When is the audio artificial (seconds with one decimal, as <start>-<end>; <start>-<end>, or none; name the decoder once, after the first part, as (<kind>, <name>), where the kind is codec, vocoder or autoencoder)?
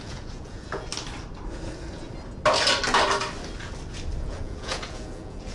0.0-0.9 (vocoder, Vocos); 4.2-5.5